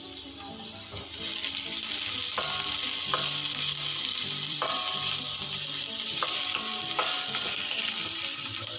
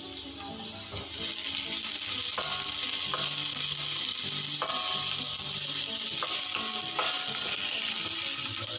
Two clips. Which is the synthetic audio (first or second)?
first